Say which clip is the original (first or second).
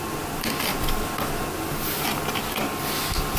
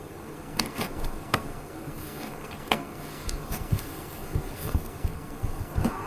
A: first